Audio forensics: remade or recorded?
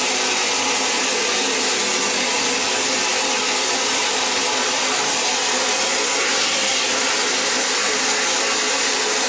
recorded